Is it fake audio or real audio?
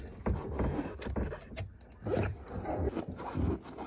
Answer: real